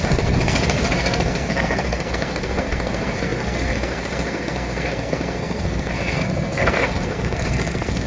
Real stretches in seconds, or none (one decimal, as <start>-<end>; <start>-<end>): none